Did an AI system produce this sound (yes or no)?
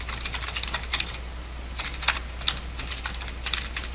no